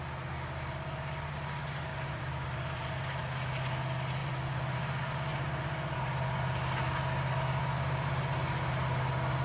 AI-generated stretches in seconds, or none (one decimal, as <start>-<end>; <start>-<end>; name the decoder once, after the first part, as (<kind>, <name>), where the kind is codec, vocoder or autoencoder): 1.9-3.2 (vocoder, BigVGAN v2); 4.2-4.8; 5.3-6.0